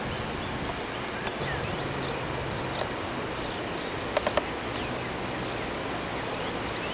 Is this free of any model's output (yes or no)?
yes